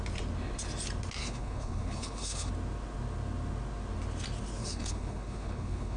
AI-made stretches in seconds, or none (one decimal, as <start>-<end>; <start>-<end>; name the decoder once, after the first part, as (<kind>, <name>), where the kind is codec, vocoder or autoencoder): 1.2-2.5 (codec, HILCodec); 4.6-6.0